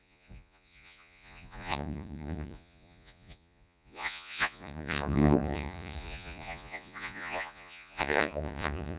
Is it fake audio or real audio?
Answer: fake